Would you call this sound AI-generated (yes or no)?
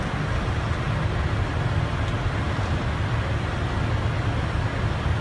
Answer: no